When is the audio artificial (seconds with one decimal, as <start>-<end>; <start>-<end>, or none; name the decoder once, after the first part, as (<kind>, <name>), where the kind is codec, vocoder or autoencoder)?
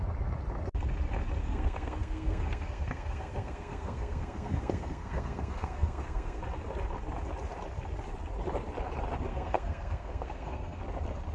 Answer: 1.4-6.4 (codec, SNAC); 9.3-10.8